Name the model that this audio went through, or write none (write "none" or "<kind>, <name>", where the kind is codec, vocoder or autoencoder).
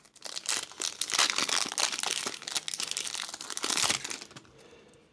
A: none